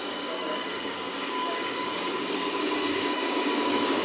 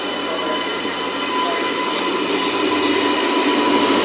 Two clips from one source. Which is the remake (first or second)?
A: first